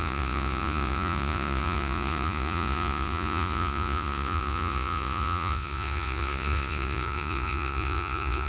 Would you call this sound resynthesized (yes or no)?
yes